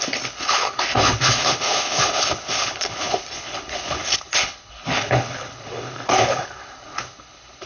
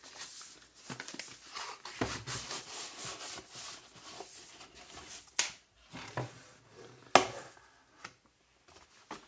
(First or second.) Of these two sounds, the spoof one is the first